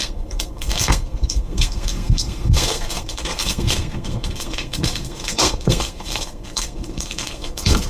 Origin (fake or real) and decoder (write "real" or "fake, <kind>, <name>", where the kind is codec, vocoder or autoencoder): fake, codec, SNAC